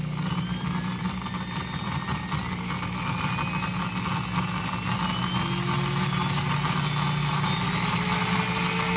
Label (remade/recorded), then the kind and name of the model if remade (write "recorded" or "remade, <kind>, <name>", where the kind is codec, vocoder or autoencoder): recorded